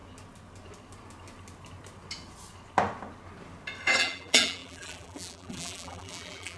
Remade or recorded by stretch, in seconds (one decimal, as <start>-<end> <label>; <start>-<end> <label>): 0.0-4.0 recorded; 4.0-6.6 remade